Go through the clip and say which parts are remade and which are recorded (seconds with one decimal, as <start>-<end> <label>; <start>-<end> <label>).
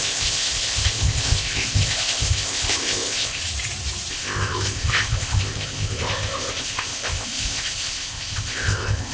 0.0-3.4 remade; 3.4-4.1 recorded; 4.1-9.1 remade